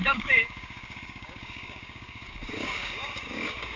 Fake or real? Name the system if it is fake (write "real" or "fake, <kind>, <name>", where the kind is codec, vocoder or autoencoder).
fake, codec, DAC